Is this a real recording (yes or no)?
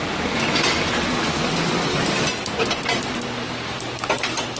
yes